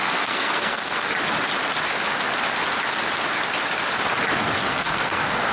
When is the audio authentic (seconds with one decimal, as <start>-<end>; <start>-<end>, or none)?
1.1-4.4